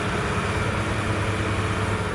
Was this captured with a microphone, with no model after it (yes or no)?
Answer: yes